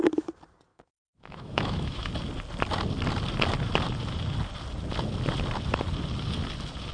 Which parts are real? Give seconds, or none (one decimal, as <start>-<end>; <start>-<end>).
0.0-0.7; 2.1-6.9

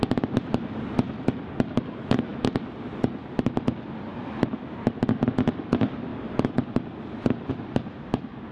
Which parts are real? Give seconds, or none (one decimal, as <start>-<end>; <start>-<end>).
0.0-8.5

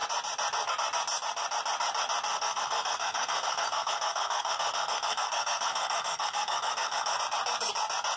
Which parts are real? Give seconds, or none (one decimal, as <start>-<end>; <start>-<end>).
0.0-2.3; 7.2-8.2